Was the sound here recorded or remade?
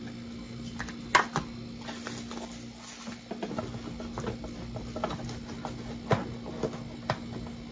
recorded